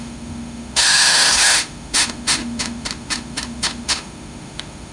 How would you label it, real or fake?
fake